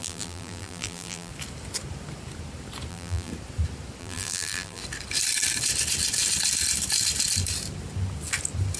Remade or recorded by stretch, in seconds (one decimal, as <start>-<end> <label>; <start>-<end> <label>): 0.0-1.3 remade; 1.3-2.9 recorded; 2.9-3.3 remade; 3.3-4.0 recorded; 4.0-4.8 remade; 4.8-8.8 recorded